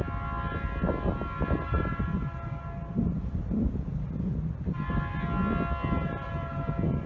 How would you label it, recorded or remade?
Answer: recorded